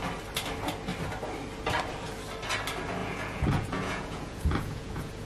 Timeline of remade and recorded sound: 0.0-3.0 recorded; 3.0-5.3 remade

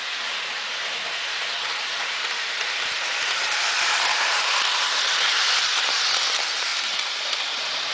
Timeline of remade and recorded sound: 0.0-6.7 remade; 6.7-7.3 recorded; 7.3-7.9 remade

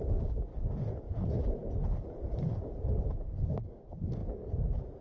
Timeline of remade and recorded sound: 0.0-0.5 remade; 0.5-3.5 recorded; 3.5-4.2 remade; 4.2-5.0 recorded

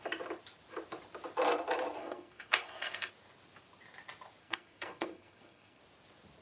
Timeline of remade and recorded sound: 0.0-2.0 recorded; 2.0-3.1 remade; 3.1-4.4 recorded; 4.4-5.8 remade; 5.8-6.4 recorded

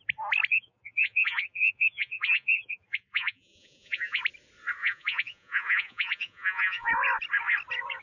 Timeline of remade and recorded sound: 0.0-0.5 recorded; 0.5-4.2 remade; 4.2-4.8 recorded; 4.8-6.9 remade; 6.9-8.0 recorded

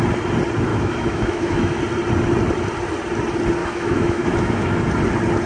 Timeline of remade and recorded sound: 0.0-0.7 recorded; 0.7-1.8 remade; 1.8-3.6 recorded; 3.6-4.8 remade; 4.8-5.5 recorded

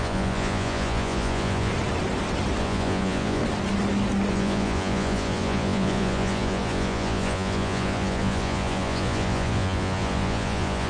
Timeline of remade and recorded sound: 0.0-1.7 remade; 1.7-2.6 recorded; 2.6-3.4 remade; 3.4-4.3 recorded; 4.3-10.9 remade

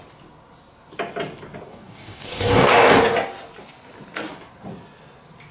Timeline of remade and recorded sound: 0.0-1.7 recorded; 1.7-3.0 remade; 3.0-5.5 recorded